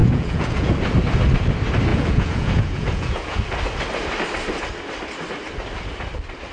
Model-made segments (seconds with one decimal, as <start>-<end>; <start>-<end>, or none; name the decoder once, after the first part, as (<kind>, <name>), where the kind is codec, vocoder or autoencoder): 0.0-0.7 (vocoder, Vocos); 1.9-3.4